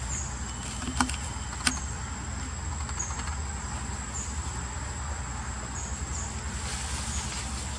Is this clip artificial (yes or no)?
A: no